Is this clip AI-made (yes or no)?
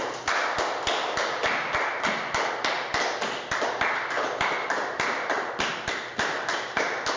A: no